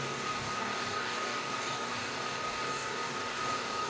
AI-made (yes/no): yes